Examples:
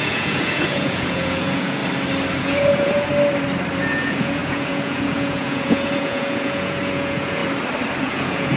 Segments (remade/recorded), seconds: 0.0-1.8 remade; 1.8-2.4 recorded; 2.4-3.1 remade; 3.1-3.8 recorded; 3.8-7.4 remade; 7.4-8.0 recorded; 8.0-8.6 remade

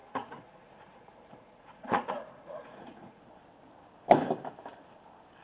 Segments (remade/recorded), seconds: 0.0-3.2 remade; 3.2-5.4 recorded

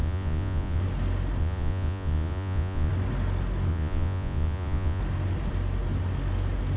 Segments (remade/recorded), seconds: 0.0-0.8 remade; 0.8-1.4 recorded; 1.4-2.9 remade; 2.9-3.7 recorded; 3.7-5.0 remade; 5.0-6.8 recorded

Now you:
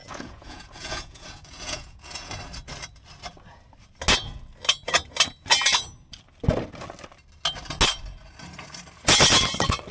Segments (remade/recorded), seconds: 0.0-2.3 remade; 2.3-9.9 recorded

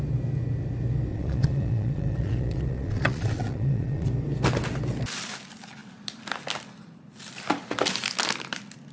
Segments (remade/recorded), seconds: 0.0-1.1 recorded; 1.1-4.1 remade; 4.1-8.9 recorded

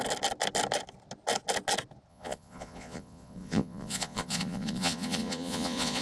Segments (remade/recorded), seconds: 0.0-2.1 recorded; 2.1-6.0 remade

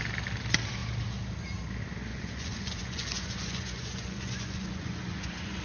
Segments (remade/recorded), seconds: 0.0-2.1 recorded; 2.1-5.6 remade